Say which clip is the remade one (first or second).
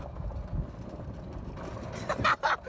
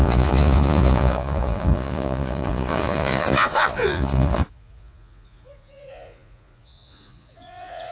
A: second